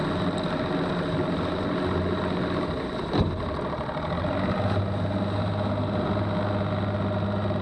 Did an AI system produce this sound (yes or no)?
no